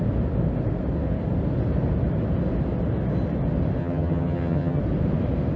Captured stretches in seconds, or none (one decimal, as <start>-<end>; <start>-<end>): 0.0-3.8; 4.8-5.6